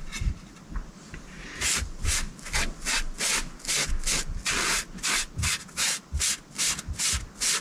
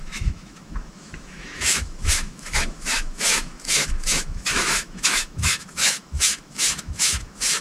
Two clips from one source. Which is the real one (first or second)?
first